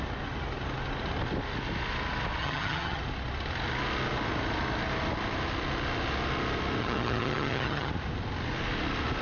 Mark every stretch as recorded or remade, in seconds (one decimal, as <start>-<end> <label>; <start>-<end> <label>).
0.0-2.4 recorded; 2.4-3.0 remade; 3.0-6.8 recorded; 6.8-7.9 remade; 7.9-9.2 recorded